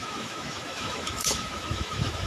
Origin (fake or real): fake